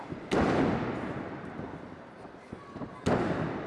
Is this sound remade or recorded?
recorded